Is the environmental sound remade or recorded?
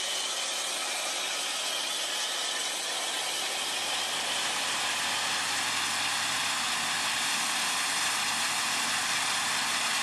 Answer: recorded